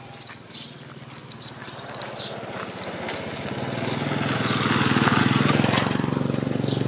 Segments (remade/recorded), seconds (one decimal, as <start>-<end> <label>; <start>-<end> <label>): 0.0-6.9 recorded